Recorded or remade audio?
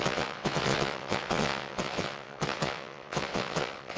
remade